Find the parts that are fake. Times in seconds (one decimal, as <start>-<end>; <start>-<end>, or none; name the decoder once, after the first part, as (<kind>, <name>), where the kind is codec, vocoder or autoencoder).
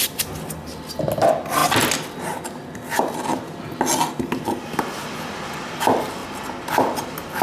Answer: none